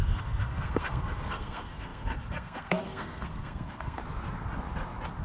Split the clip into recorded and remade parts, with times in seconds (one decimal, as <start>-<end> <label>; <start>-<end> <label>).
0.0-4.0 remade; 4.0-5.2 recorded